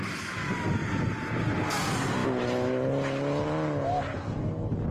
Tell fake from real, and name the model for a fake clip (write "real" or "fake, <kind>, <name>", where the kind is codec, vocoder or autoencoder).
real